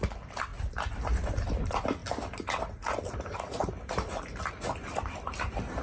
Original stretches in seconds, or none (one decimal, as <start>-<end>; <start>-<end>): 0.0-5.8